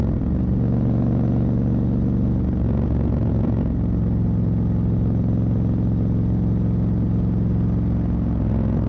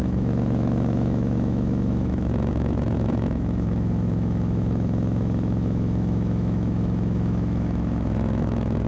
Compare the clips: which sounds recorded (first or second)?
first